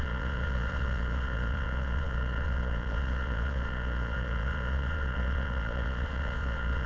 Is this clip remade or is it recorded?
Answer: remade